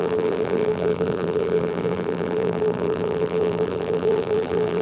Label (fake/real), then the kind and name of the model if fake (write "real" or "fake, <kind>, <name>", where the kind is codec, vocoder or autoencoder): fake, vocoder, BigVGAN v2